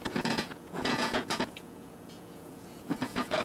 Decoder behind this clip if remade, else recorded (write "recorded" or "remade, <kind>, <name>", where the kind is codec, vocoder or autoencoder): remade, vocoder, Vocos